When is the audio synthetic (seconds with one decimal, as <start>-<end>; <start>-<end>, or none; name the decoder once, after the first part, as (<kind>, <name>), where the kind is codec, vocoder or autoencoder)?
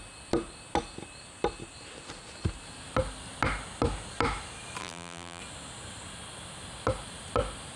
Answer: 4.8-5.4 (vocoder, BigVGAN v2)